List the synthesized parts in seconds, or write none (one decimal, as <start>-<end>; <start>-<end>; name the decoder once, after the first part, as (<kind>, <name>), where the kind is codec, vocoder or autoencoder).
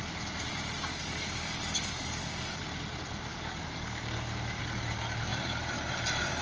0.9-2.6 (codec, DAC); 3.3-4.6